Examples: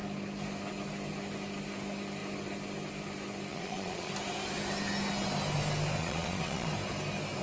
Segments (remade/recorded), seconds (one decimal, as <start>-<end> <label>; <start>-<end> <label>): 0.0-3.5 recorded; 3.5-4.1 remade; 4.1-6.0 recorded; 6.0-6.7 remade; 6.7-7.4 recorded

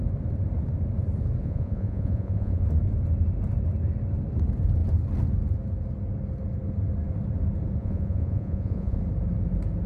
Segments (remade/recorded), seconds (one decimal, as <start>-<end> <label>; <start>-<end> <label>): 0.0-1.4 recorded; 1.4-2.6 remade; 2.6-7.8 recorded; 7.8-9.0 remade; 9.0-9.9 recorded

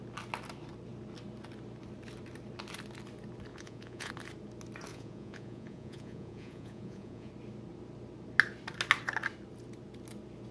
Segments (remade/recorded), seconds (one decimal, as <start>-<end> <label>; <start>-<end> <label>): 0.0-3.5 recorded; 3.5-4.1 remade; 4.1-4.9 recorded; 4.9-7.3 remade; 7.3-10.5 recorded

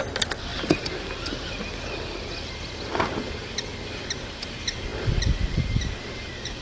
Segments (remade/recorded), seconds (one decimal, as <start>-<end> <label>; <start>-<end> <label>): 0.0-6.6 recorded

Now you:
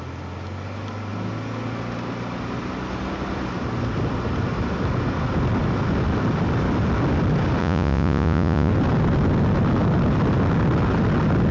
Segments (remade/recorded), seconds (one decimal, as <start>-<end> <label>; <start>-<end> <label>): 0.0-7.6 recorded; 7.6-8.7 remade; 8.7-11.5 recorded

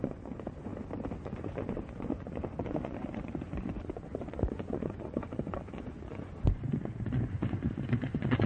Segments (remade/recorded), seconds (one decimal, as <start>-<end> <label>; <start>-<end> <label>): 0.0-0.7 remade; 0.7-1.2 recorded; 1.2-8.5 remade